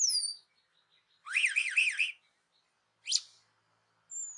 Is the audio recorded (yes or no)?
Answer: yes